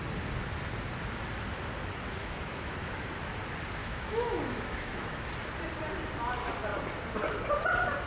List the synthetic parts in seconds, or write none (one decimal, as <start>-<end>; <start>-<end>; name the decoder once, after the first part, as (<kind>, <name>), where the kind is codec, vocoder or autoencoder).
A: 2.2-2.9 (autoencoder, DAC-VAE); 3.8-5.3